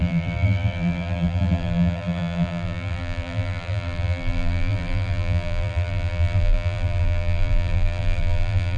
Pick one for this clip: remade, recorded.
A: remade